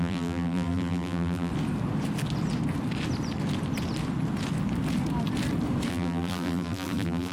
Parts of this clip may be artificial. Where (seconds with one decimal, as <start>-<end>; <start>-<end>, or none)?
0.0-1.5; 5.9-7.3